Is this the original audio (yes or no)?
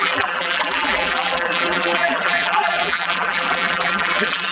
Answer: no